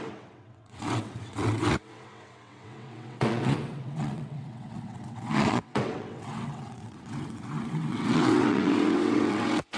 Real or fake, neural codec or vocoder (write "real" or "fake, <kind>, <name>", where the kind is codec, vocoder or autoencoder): fake, vocoder, WaveNeXt